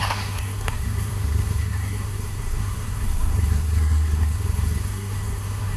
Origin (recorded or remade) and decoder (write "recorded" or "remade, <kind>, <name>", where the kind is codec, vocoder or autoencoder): remade, codec, SNAC